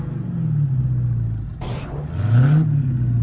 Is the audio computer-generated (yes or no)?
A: no